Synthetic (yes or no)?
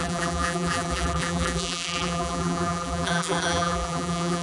yes